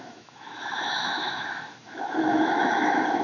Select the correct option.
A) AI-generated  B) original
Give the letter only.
A